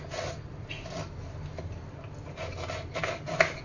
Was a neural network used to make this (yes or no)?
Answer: no